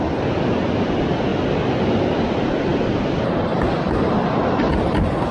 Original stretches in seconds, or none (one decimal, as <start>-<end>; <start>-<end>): 0.0-5.3